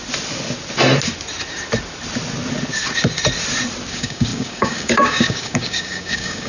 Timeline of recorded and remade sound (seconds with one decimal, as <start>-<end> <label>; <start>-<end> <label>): 0.0-3.9 recorded; 3.9-6.5 remade